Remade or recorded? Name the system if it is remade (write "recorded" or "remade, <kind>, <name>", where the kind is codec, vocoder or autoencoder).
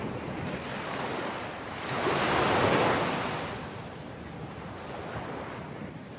recorded